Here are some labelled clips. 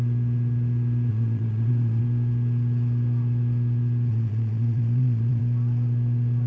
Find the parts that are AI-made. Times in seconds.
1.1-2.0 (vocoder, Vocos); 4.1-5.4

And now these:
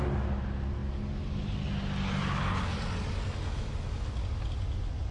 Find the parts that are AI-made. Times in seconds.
none

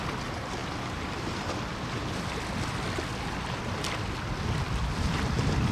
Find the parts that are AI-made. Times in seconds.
none

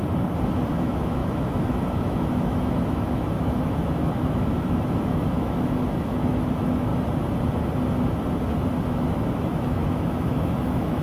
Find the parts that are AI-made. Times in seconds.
0.7-6.9 (autoencoder, DAC-VAE); 8.8-11.0

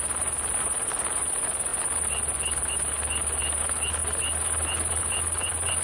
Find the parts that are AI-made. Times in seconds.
none